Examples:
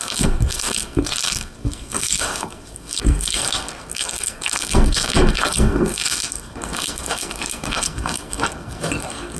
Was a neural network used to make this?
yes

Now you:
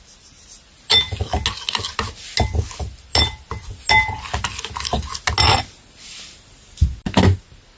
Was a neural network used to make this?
no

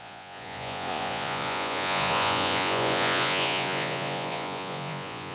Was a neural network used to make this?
yes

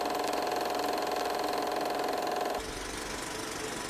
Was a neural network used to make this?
no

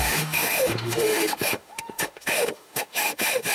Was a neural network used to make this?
yes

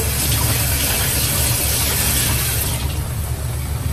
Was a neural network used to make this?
no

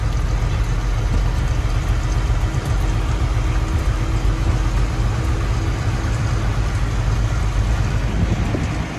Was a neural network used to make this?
no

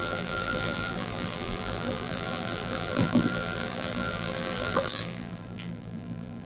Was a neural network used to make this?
yes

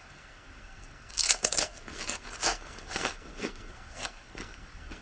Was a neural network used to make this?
yes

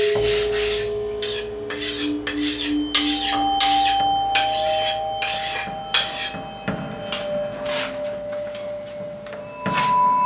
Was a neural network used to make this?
no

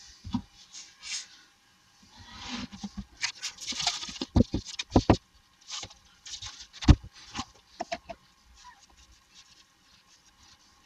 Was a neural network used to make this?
no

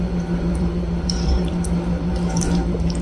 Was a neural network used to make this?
yes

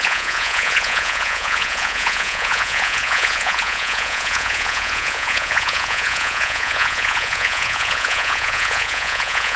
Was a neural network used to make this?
yes